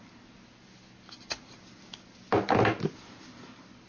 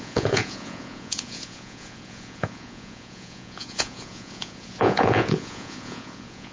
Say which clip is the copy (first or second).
second